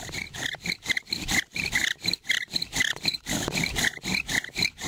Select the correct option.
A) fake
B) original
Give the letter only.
A